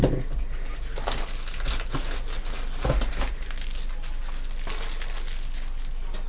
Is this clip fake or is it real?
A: real